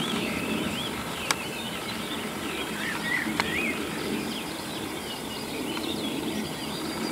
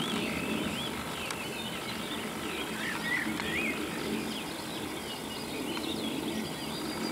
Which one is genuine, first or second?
second